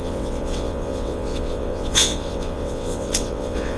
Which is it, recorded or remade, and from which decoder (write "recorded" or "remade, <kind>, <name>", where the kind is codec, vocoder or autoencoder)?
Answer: remade, vocoder, WaveNeXt